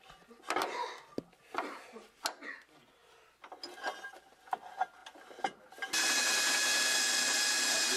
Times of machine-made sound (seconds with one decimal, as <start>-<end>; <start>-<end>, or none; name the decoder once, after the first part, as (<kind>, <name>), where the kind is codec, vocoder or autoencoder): none